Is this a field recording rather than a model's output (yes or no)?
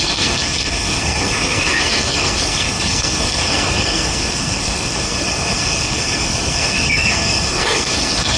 no